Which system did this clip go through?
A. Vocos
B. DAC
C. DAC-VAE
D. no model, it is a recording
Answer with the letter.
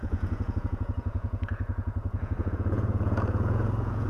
A